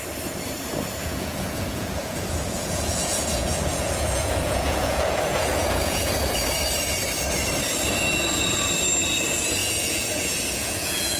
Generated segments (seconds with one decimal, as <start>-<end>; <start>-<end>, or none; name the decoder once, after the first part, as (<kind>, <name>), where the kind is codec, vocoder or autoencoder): 1.0-6.1 (vocoder, Vocos); 9.6-11.2